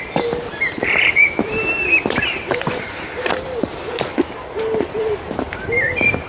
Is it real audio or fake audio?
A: fake